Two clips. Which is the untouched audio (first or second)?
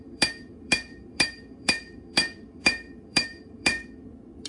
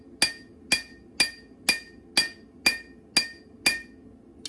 second